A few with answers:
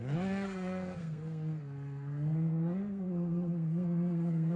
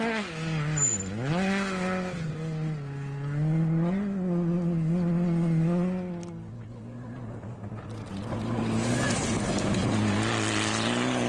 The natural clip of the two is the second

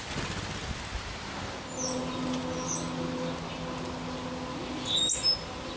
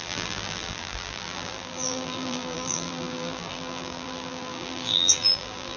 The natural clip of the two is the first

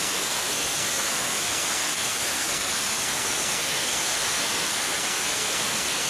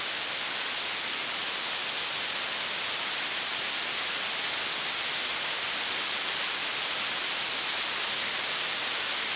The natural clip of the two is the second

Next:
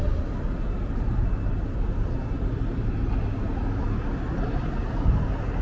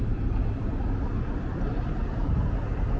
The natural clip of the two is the first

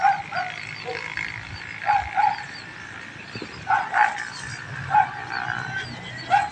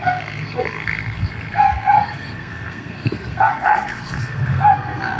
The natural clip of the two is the first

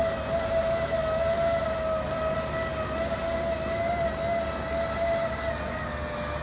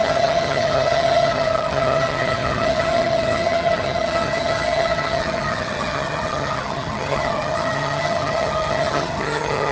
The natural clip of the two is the first